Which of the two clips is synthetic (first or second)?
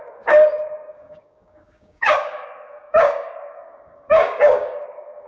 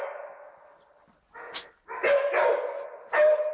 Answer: first